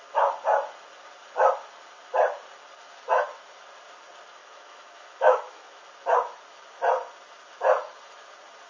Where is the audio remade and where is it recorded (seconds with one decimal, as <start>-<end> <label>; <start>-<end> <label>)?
0.0-4.4 recorded; 4.4-5.8 remade; 5.8-8.7 recorded